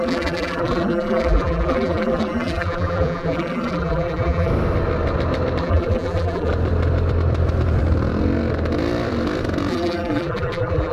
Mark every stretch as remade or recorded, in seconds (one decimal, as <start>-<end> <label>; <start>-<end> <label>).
0.0-4.5 remade; 4.5-5.6 recorded; 5.6-6.5 remade; 6.5-9.7 recorded; 9.7-10.9 remade